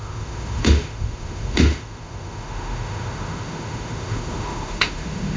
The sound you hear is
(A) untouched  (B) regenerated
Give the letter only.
B